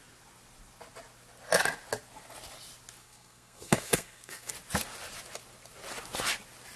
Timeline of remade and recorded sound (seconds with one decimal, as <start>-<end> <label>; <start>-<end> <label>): 0.0-3.0 recorded; 3.0-4.5 remade; 4.5-6.8 recorded